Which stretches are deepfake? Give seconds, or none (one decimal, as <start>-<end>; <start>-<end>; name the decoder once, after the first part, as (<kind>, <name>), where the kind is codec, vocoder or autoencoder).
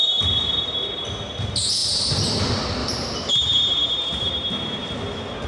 1.8-2.4 (vocoder, BigVGAN v2); 2.8-4.3